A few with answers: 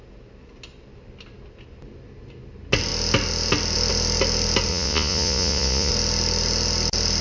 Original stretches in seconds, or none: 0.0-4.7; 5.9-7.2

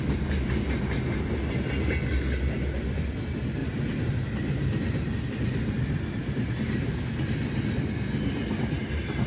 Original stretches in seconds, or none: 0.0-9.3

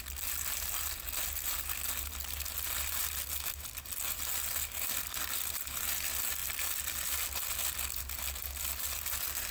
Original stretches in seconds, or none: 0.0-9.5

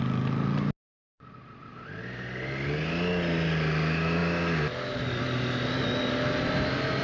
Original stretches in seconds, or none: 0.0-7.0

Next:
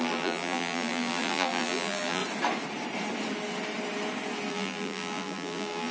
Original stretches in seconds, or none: 2.2-4.5